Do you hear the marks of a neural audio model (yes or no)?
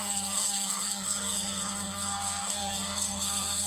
yes